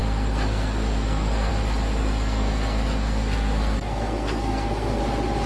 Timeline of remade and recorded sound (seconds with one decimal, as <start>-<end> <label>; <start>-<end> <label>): 0.0-1.5 remade; 1.5-2.0 recorded; 2.0-5.0 remade; 5.0-5.5 recorded